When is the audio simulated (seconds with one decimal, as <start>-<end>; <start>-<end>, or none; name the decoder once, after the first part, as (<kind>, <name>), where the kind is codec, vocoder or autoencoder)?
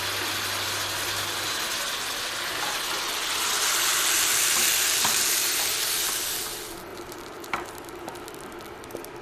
3.9-5.3 (vocoder, BigVGAN v2); 6.9-8.3